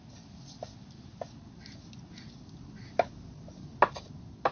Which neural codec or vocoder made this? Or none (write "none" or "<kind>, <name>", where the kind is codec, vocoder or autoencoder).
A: none